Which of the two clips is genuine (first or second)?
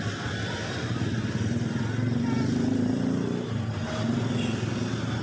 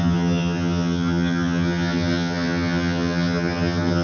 first